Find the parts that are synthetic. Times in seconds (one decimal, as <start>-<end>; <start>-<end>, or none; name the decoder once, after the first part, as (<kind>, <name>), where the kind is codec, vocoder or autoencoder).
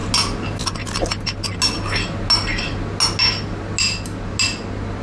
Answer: none